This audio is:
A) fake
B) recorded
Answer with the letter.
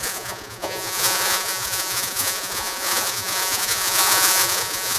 A